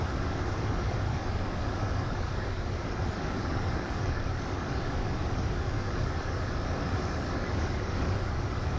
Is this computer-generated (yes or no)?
yes